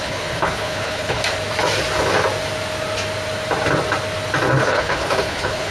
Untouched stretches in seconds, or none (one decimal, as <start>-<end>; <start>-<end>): 1.2-4.6